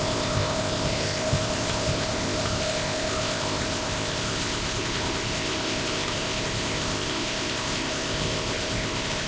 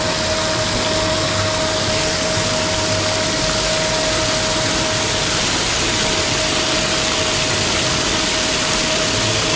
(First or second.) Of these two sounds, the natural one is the second